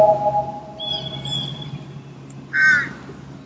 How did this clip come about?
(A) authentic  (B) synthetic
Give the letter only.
A